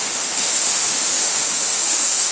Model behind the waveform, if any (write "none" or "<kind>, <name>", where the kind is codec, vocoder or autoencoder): autoencoder, DAC-VAE